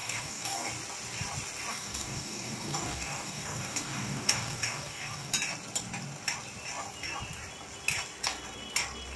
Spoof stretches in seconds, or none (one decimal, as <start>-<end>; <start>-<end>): 0.0-0.7; 1.7-5.3

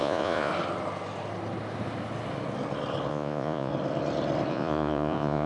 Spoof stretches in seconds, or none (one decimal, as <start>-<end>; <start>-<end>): 0.0-0.5; 3.1-3.7; 4.5-5.5